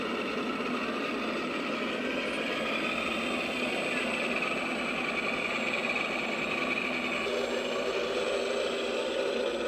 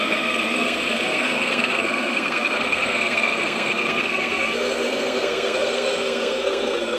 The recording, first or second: first